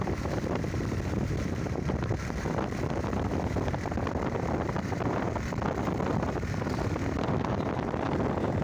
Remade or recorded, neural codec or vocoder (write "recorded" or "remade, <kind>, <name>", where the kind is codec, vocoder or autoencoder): remade, vocoder, BigVGAN v2